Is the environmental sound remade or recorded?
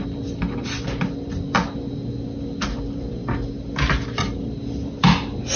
recorded